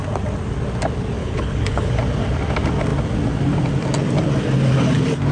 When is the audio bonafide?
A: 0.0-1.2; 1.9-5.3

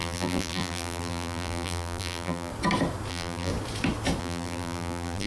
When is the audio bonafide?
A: 2.5-3.1; 3.5-4.2

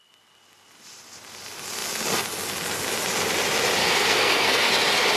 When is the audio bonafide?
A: 0.0-3.8; 4.7-5.2

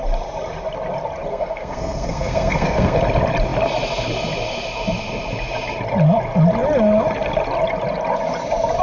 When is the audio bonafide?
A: 0.0-1.3; 3.0-8.8

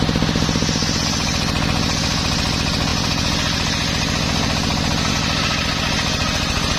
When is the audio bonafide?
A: 0.0-6.8

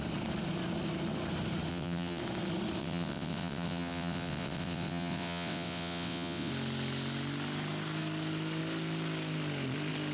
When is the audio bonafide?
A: 0.0-1.7; 2.2-2.8; 6.5-10.1

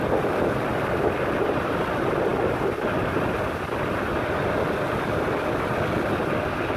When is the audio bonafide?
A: 0.0-6.8

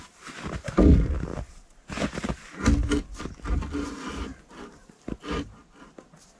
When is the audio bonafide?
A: 0.0-6.4